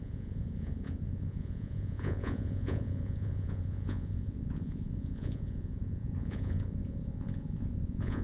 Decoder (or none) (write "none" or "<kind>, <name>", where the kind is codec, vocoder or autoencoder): vocoder, Vocos